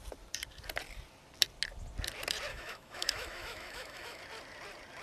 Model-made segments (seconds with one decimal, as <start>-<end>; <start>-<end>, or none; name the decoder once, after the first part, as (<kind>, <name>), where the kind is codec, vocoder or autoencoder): 2.5-4.2 (autoencoder, DAC-VAE)